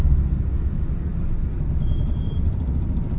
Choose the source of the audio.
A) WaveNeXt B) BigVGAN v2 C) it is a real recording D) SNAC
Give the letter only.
C